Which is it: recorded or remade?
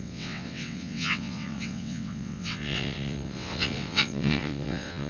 remade